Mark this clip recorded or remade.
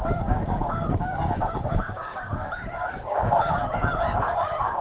remade